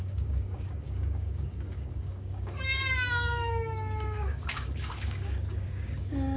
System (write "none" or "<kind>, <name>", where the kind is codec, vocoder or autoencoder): codec, DAC